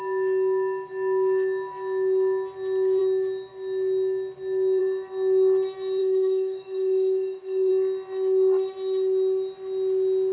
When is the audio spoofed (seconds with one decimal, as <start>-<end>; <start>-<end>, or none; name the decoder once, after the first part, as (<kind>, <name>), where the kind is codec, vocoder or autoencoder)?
6.0-7.7 (codec, DAC)